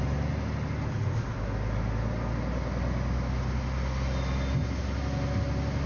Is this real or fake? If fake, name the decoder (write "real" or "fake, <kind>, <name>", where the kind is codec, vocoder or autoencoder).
real